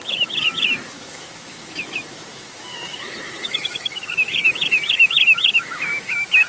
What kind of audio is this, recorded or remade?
remade